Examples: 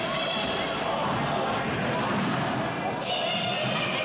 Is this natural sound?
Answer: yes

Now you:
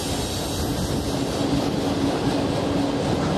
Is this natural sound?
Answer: yes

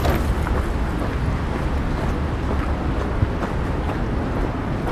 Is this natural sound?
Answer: yes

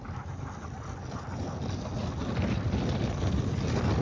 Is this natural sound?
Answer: yes